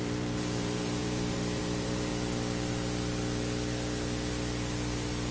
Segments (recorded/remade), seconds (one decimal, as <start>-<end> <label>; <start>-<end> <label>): 0.0-2.1 remade; 2.1-5.3 recorded